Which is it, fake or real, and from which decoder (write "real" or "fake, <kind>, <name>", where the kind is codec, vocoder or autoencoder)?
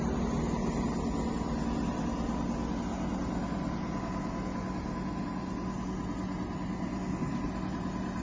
real